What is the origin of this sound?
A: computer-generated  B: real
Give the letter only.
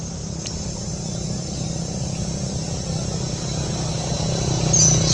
B